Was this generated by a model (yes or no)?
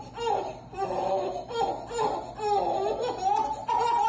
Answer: no